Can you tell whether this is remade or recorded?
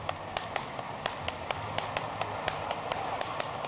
recorded